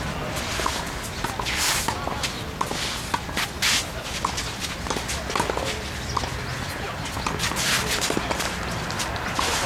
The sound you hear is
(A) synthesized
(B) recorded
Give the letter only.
B